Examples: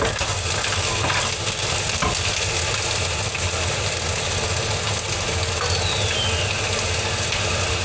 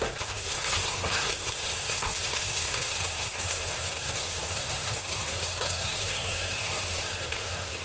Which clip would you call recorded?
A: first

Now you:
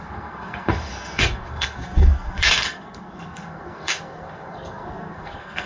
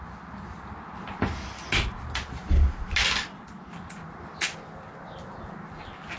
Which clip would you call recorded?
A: second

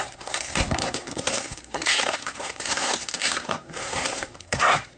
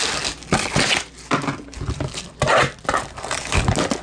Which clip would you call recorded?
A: second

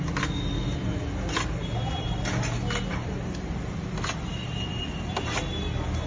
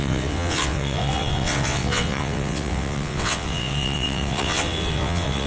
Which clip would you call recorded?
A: first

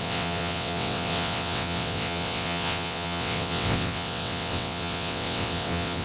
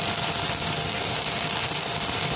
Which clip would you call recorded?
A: second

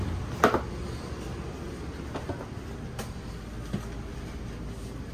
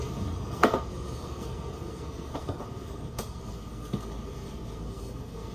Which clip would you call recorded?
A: first